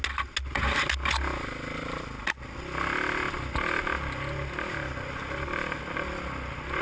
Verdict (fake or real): real